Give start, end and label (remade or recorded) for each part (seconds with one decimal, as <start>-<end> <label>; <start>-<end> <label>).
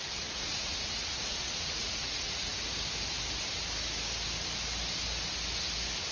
0.0-2.5 remade; 2.5-6.1 recorded